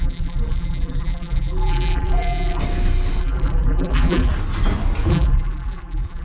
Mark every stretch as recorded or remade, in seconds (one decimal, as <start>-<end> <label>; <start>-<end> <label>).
0.0-2.6 remade; 2.6-3.2 recorded; 3.2-4.3 remade; 4.3-5.1 recorded; 5.1-6.2 remade